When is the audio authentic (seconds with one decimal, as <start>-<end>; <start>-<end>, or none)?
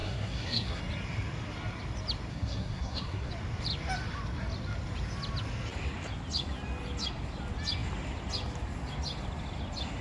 0.8-2.3; 3.3-10.0